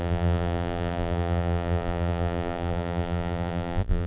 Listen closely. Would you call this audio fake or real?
fake